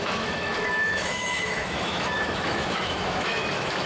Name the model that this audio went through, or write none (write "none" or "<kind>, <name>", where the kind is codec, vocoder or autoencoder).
autoencoder, DAC-VAE